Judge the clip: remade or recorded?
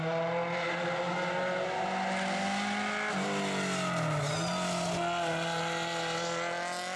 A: recorded